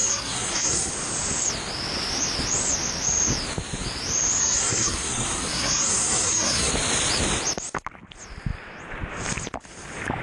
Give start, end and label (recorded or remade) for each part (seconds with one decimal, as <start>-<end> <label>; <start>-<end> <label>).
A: 0.0-0.9 remade; 0.9-4.4 recorded; 4.4-6.7 remade; 6.7-10.2 recorded